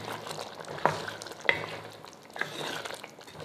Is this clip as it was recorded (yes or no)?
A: yes